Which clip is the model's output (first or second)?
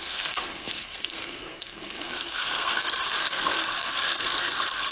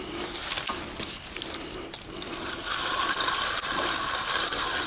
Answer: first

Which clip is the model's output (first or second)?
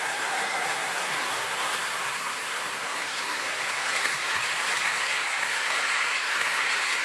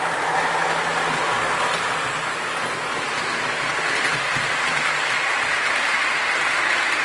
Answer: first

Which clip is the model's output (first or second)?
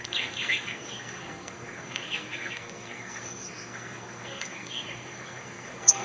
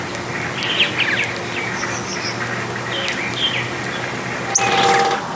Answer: first